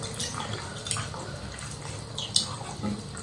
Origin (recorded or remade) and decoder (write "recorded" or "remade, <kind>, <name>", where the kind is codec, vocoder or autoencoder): recorded